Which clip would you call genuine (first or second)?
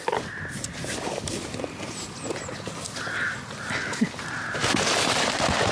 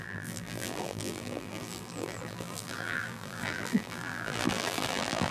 first